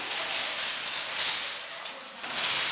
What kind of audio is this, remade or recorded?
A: recorded